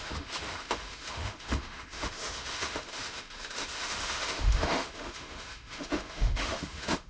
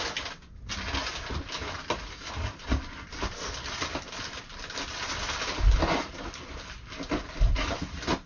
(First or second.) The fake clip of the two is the first